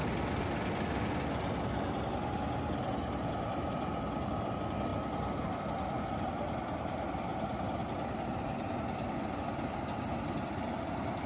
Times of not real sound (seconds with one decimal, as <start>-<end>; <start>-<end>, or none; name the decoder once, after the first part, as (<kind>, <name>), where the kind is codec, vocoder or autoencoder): none